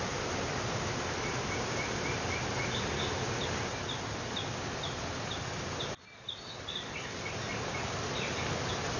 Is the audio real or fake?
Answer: real